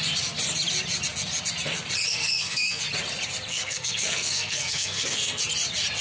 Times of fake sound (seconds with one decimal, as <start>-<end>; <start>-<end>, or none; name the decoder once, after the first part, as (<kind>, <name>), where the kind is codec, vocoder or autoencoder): 2.1-2.8 (codec, SNAC); 3.5-5.4